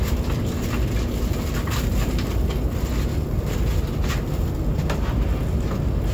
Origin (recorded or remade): recorded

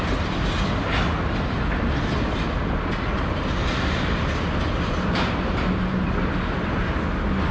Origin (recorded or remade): recorded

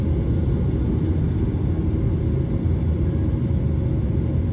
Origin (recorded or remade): recorded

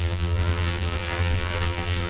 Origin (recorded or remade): remade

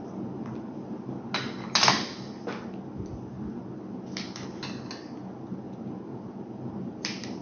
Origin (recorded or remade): recorded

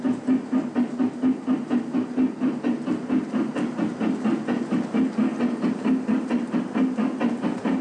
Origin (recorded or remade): recorded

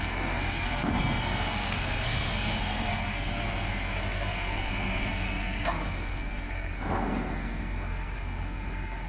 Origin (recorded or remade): remade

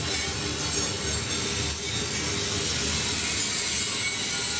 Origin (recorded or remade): recorded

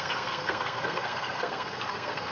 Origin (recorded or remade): remade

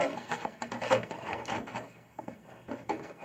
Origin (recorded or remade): remade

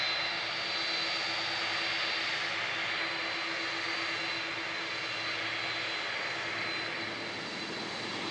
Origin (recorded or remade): recorded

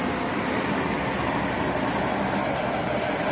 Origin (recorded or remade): recorded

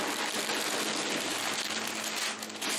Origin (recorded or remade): recorded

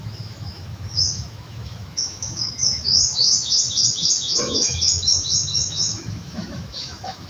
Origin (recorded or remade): remade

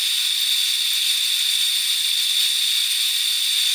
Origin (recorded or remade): recorded